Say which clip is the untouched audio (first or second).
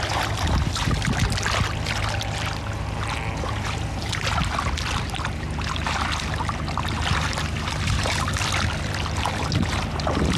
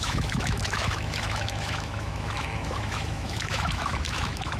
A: first